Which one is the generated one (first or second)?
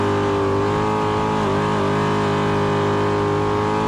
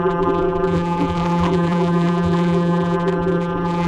second